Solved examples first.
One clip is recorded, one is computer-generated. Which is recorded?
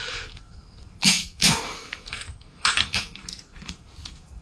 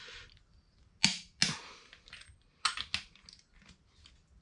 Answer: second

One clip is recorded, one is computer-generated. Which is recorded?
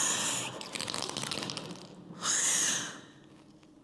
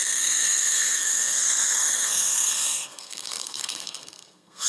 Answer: first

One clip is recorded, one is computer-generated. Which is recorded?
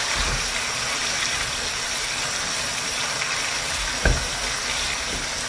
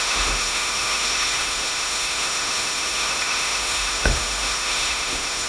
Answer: first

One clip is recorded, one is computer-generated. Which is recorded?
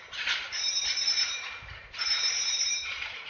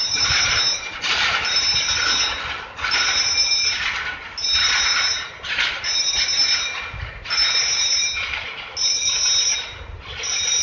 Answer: second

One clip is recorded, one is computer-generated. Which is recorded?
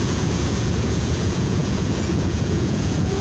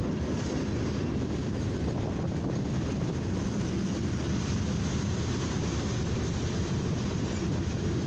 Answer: second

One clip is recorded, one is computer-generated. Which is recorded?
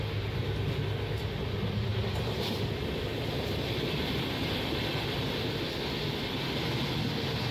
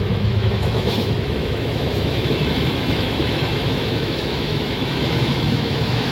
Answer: first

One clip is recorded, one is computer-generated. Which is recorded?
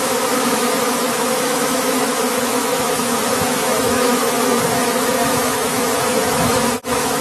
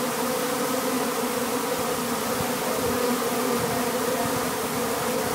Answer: second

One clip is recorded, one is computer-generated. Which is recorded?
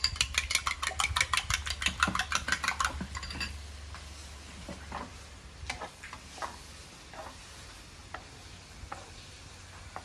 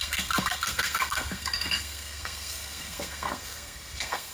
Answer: first